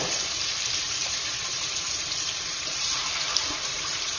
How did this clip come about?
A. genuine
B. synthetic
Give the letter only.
B